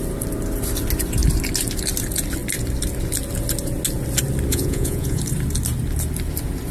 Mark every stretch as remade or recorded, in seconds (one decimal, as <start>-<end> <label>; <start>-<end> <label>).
0.0-4.5 recorded; 4.5-5.2 remade; 5.2-6.7 recorded